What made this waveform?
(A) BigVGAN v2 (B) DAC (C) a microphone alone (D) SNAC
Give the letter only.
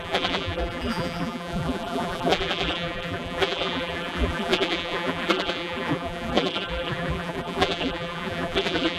A